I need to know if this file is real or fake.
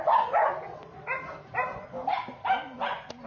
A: real